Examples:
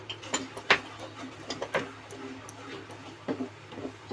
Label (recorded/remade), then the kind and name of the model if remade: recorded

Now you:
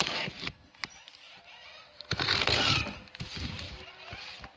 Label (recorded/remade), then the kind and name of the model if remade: recorded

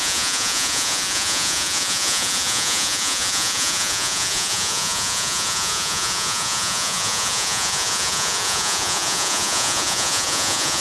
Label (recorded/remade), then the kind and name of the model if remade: remade, vocoder, Vocos